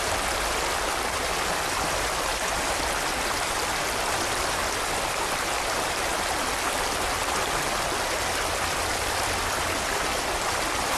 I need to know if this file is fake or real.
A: fake